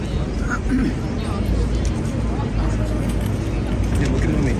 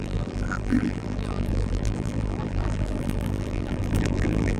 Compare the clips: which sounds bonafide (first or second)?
first